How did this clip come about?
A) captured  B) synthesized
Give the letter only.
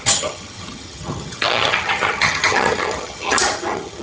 B